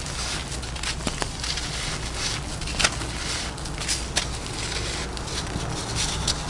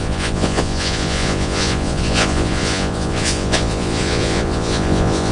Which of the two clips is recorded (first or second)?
first